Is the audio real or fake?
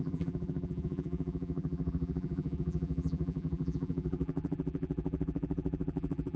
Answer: fake